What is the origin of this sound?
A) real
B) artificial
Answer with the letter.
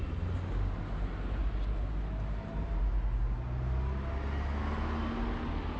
A